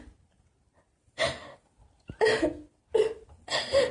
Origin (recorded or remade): recorded